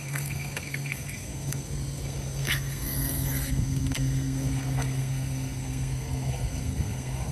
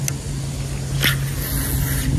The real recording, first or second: second